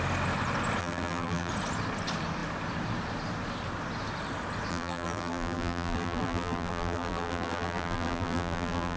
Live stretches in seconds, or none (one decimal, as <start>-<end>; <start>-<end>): 0.0-0.8; 1.5-4.7